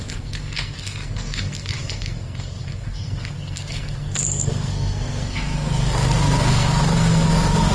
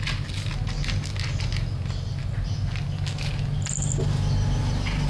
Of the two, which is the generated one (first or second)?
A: first